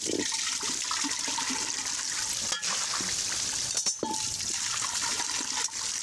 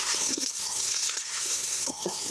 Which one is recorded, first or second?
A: first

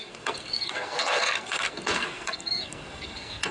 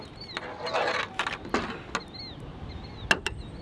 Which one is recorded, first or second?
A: second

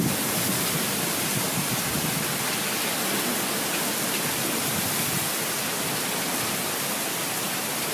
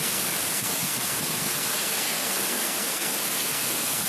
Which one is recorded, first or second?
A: first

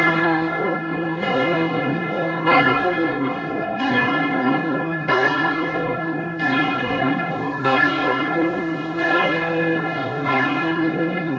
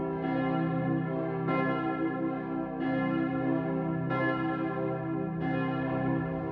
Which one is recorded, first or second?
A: second